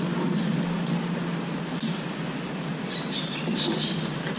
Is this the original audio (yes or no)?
yes